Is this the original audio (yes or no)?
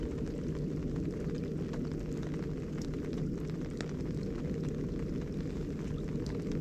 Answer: yes